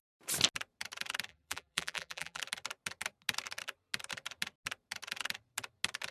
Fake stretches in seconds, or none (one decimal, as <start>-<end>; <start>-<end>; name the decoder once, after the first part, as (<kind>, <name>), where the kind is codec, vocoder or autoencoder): 1.3-2.4 (vocoder, BigVGAN v2)